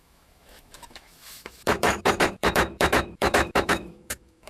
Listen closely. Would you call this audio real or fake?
fake